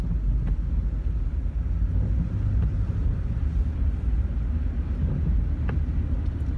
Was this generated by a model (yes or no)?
no